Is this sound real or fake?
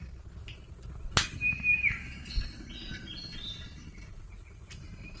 real